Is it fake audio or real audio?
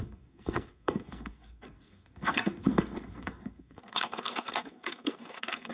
fake